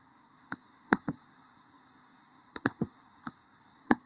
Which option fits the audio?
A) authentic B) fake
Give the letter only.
B